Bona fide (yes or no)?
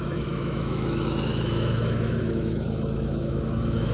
no